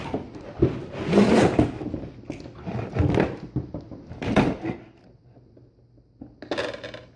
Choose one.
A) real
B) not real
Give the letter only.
A